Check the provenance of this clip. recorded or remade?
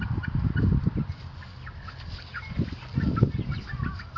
recorded